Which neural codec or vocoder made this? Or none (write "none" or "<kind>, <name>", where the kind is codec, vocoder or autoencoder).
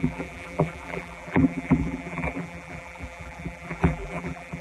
vocoder, BigVGAN v2